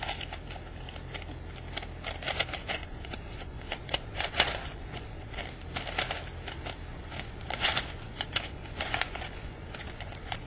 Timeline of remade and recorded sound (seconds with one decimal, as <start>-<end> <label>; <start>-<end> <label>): 0.0-2.6 recorded; 2.6-5.4 remade; 5.4-6.9 recorded; 6.9-10.5 remade